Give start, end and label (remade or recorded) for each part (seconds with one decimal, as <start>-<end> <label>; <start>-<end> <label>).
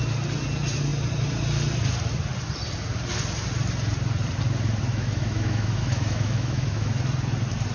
0.0-4.9 recorded; 4.9-6.9 remade; 6.9-7.7 recorded